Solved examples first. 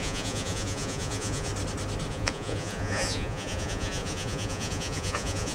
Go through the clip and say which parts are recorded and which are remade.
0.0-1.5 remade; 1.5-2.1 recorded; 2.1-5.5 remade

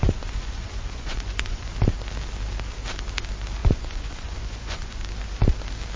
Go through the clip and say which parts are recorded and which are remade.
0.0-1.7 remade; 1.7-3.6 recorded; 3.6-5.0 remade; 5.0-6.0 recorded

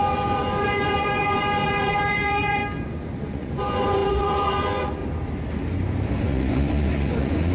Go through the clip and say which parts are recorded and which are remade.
0.0-2.6 remade; 2.6-3.2 recorded; 3.2-5.0 remade; 5.0-6.2 recorded; 6.2-7.5 remade

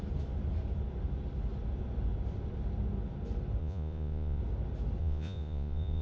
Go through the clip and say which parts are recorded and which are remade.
0.0-3.6 recorded; 3.6-4.4 remade; 4.4-5.0 recorded; 5.0-6.0 remade

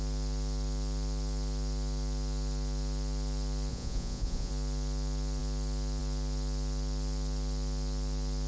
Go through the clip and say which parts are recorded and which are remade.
0.0-3.7 recorded; 3.7-4.5 remade; 4.5-8.5 recorded